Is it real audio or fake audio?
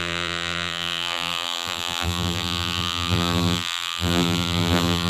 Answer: fake